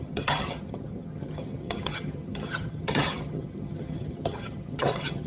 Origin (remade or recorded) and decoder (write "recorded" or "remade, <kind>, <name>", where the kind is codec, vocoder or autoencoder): remade, vocoder, HiFi-GAN